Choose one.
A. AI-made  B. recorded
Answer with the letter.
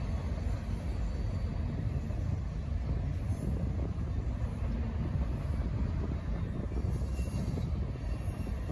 B